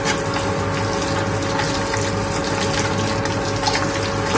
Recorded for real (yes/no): yes